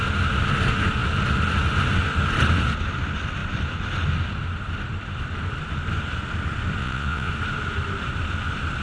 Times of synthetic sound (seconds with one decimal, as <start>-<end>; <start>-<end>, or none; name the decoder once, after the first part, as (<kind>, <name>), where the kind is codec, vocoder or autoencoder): 6.8-7.3 (vocoder, Vocos)

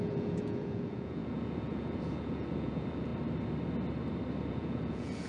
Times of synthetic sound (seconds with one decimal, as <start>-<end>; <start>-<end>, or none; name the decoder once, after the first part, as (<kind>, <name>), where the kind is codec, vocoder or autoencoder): 0.0-3.1 (vocoder, Vocos); 4.5-5.3

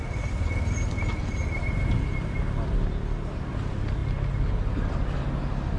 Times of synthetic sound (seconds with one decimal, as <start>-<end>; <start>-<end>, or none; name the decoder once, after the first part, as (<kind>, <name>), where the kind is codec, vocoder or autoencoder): none

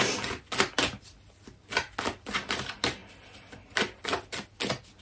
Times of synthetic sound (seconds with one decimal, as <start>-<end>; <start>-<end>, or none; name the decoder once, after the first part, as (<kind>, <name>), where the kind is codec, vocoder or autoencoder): none

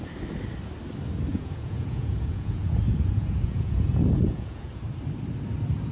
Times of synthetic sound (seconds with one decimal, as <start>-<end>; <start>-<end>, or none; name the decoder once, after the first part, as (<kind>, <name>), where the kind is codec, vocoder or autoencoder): 1.3-4.8 (vocoder, Vocos)

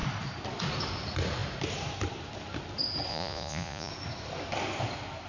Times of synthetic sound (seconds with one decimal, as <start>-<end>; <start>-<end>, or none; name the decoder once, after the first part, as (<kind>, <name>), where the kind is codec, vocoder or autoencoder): 3.1-3.9 (vocoder, Vocos)

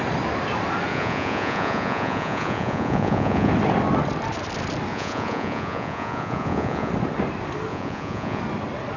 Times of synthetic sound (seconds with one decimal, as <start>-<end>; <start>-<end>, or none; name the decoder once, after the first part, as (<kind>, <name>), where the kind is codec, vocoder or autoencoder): 0.9-3.5 (vocoder, Vocos); 4.9-6.9; 7.7-8.4

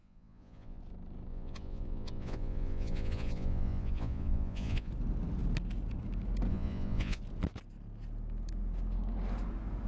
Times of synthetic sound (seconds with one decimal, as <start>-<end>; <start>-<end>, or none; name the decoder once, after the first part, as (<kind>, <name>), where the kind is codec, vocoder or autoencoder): 0.0-0.8 (vocoder, Vocos); 1.3-4.9; 6.5-7.2